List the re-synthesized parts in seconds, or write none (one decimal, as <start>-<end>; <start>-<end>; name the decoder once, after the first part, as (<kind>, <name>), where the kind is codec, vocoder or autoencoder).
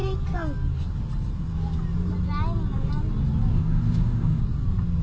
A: 3.5-4.4 (autoencoder, DAC-VAE)